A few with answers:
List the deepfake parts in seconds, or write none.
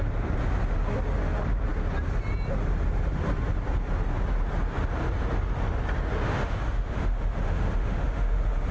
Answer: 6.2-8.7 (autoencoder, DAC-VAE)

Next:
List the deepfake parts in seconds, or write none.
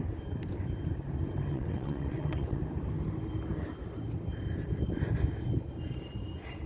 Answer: 1.5-2.6 (vocoder, WaveNeXt)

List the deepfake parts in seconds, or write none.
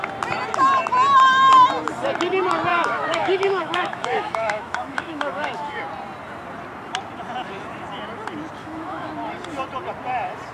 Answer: 2.7-5.8 (autoencoder, DAC-VAE); 8.6-9.1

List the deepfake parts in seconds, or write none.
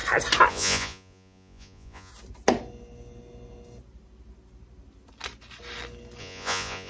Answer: 0.5-2.1 (vocoder, Vocos); 6.2-6.9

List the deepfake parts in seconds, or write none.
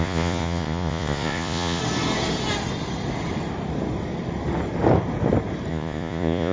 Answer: 0.0-1.8 (vocoder, Vocos); 5.7-6.5